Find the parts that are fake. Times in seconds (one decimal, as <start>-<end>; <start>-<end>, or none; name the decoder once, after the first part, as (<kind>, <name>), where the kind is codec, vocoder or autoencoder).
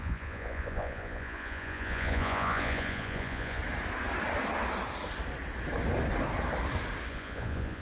0.0-3.6 (vocoder, Vocos); 7.1-7.8